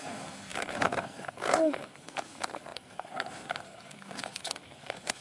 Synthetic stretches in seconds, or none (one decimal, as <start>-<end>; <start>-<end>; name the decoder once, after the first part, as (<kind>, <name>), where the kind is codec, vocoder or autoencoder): 0.0-5.2 (codec, SNAC)